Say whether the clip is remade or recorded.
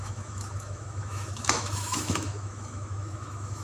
remade